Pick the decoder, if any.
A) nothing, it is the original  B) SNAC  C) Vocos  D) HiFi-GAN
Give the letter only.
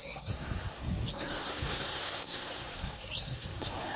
B